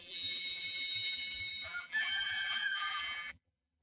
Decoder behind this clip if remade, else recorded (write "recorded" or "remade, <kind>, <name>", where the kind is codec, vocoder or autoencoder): remade, vocoder, BigVGAN v2